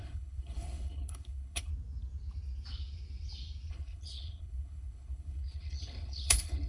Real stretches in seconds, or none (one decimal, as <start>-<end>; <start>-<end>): 1.7-3.7